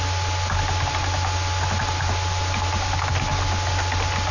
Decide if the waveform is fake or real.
real